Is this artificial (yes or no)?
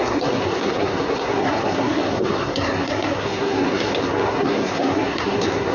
yes